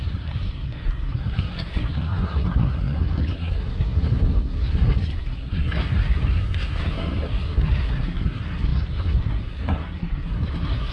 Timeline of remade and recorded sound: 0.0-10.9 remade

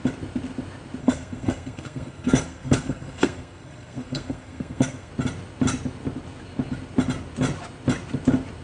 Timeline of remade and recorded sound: 0.0-1.0 recorded; 1.0-5.1 remade; 5.1-8.6 recorded